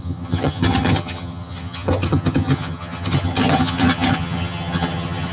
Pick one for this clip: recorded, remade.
remade